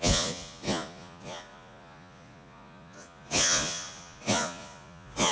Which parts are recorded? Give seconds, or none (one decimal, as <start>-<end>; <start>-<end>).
none